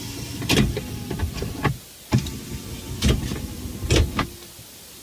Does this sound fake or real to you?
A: fake